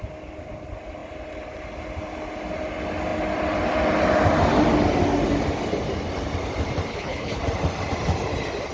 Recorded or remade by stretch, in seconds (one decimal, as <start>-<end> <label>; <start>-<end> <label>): 0.0-6.9 recorded; 6.9-7.4 remade; 7.4-8.7 recorded